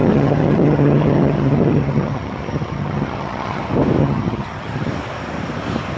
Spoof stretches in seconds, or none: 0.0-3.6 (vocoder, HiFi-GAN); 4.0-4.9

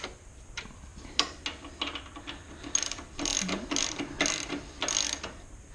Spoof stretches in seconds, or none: none

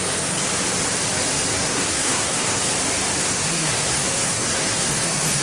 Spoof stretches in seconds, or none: 1.5-2.6 (codec, SNAC); 3.2-5.4

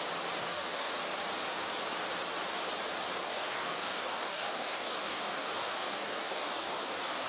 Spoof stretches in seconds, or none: 0.4-0.9 (codec, DAC); 3.2-7.3

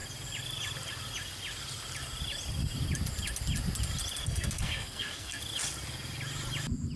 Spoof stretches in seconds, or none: 4.2-5.4 (codec, SNAC)

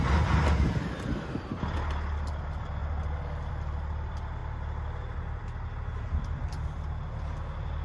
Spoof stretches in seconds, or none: none

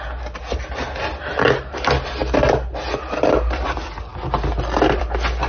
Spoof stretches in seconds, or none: none